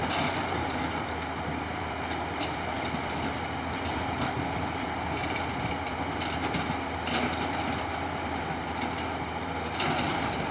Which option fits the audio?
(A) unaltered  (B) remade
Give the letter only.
B